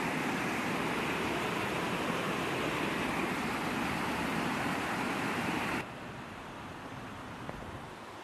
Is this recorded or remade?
recorded